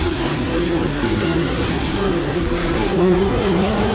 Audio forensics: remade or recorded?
remade